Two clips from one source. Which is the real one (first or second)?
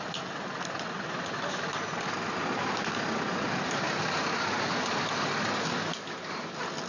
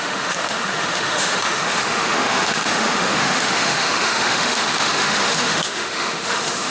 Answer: first